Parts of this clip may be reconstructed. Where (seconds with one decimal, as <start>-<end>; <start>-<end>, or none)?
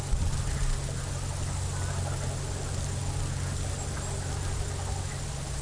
none